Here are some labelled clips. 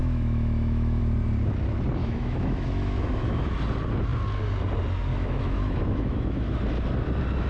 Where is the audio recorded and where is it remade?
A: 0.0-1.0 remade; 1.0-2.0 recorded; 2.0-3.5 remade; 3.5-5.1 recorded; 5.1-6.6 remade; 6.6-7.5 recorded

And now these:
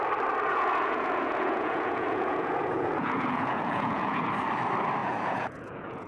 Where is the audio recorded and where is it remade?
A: 0.0-0.5 recorded; 0.5-4.2 remade; 4.2-5.0 recorded; 5.0-6.1 remade

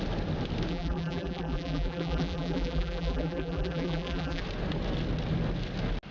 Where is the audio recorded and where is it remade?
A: 0.0-0.7 recorded; 0.7-4.4 remade; 4.4-6.1 recorded

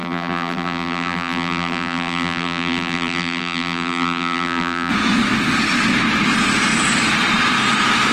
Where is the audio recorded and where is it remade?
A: 0.0-4.9 remade; 4.9-8.1 recorded